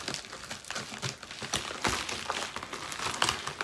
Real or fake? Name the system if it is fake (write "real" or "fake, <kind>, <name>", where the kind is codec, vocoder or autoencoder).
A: real